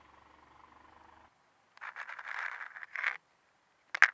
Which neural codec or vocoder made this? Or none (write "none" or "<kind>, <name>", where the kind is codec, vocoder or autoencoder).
none